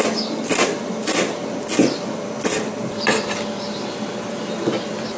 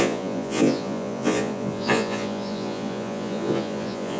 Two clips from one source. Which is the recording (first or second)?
first